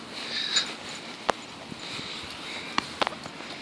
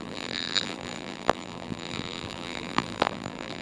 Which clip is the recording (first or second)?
first